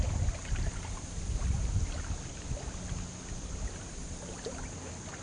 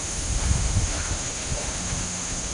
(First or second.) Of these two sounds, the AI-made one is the second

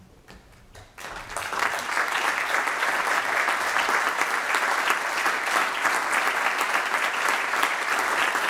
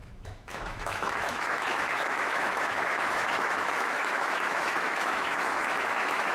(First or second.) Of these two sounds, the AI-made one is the second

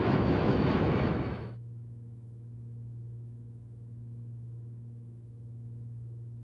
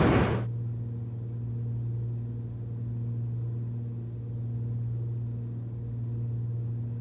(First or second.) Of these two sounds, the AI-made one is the first